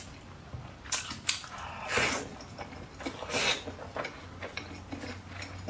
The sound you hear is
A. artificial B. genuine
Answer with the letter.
B